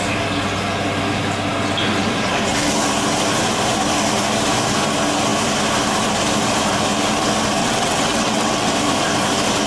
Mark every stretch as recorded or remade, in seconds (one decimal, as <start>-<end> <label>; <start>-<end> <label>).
0.0-7.6 recorded; 7.6-8.7 remade; 8.7-9.7 recorded